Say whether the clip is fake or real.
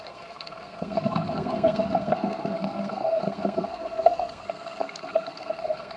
fake